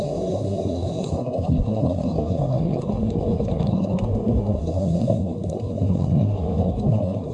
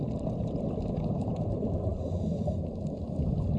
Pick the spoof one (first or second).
first